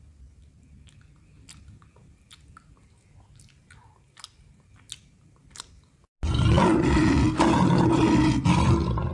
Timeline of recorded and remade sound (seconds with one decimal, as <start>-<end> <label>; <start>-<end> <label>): 0.0-9.1 recorded

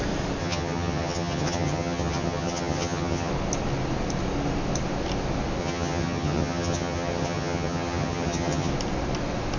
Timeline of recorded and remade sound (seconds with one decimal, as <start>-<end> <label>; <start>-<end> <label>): 0.0-0.4 recorded; 0.4-3.3 remade; 3.3-5.6 recorded; 5.6-8.7 remade; 8.7-9.6 recorded